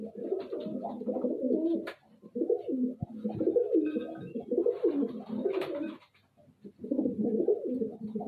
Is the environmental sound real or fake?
real